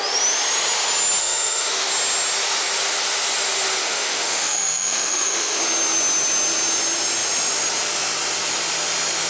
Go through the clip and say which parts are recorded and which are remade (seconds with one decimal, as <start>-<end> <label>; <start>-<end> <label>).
0.0-1.2 recorded; 1.2-1.9 remade; 1.9-3.8 recorded; 3.8-5.6 remade; 5.6-9.3 recorded